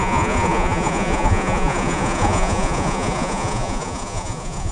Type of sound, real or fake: fake